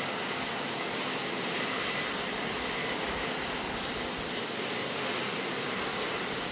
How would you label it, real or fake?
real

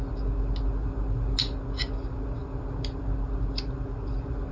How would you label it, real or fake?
real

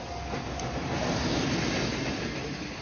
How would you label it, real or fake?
real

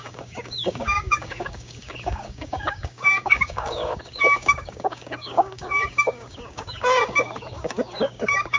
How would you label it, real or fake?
fake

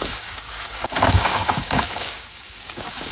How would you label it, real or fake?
fake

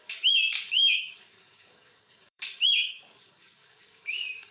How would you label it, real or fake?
fake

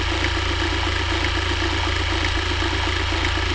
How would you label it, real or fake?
real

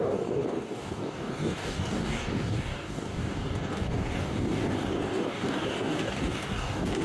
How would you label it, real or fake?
fake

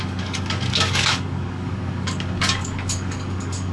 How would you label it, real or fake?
fake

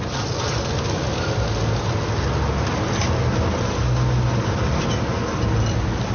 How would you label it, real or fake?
real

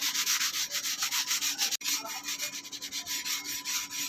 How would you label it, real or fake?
real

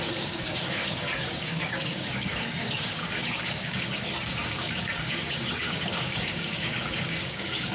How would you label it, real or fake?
fake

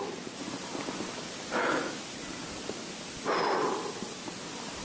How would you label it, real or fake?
real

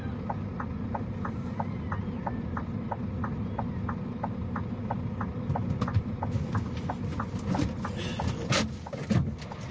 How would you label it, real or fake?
real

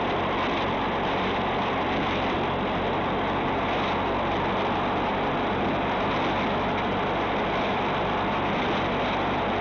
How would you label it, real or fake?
real